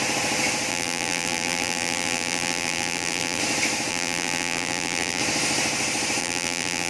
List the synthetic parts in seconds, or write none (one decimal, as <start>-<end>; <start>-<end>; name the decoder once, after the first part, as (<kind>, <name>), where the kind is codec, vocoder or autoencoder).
0.7-3.4 (vocoder, BigVGAN v2); 3.9-5.2; 6.2-6.9